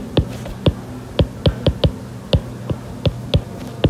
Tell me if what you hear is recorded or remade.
recorded